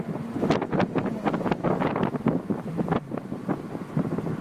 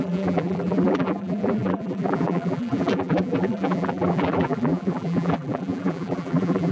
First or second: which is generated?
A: second